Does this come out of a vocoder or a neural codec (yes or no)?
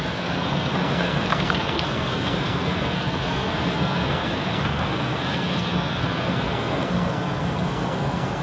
yes